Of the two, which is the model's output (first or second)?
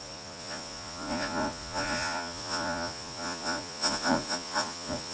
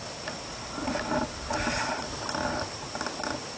first